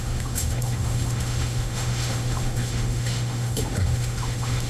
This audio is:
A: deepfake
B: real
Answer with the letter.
A